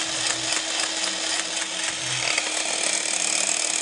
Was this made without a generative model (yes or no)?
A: yes